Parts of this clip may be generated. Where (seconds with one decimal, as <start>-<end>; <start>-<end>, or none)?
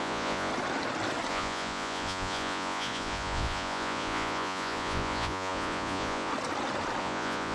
0.0-0.5; 1.3-6.3; 7.0-7.5